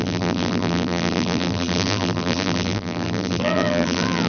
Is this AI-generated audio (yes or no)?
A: yes